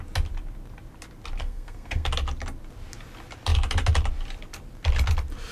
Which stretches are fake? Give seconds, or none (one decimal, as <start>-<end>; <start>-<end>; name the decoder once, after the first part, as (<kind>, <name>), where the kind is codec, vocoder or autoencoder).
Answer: 1.4-2.1 (codec, SNAC)

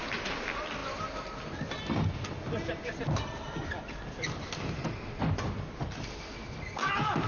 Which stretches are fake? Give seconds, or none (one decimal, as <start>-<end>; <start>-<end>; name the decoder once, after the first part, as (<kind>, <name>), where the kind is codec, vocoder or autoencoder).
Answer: none

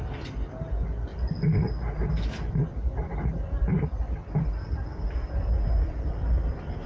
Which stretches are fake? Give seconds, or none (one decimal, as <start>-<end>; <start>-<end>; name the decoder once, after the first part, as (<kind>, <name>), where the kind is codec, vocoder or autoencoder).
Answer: none

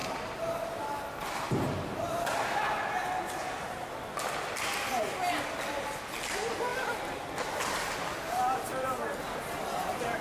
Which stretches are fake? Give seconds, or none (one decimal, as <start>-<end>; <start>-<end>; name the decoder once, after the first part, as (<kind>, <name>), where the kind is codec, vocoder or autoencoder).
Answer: 6.7-10.2 (vocoder, BigVGAN v2)

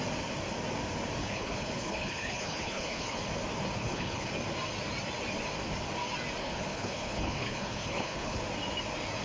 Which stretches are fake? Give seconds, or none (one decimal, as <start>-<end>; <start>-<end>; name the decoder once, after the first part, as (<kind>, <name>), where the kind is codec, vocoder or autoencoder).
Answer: 1.2-3.2 (codec, HILCodec); 3.8-4.3; 6.4-8.4

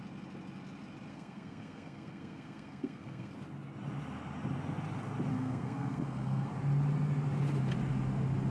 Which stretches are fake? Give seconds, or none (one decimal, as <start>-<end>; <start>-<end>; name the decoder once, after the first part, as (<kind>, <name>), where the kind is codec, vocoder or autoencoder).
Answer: 1.1-3.3 (codec, SNAC); 5.3-6.5

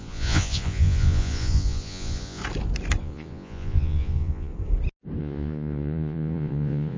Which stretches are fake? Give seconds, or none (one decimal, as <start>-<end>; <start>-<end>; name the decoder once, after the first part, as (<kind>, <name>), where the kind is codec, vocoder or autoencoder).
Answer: 0.0-2.4 (vocoder, Vocos); 3.0-4.5; 5.2-7.0